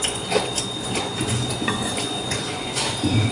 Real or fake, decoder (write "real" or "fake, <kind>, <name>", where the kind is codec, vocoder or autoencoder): fake, vocoder, Vocos